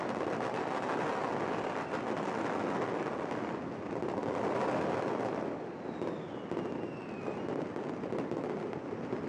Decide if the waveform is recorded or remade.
recorded